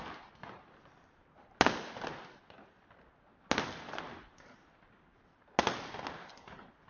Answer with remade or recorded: recorded